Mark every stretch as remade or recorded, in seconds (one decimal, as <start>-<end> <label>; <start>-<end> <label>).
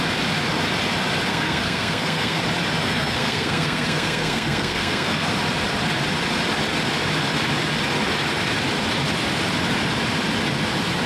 0.0-1.3 recorded; 1.3-2.4 remade; 2.4-2.8 recorded; 2.8-5.3 remade; 5.3-11.1 recorded